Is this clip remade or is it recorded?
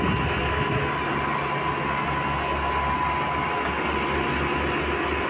recorded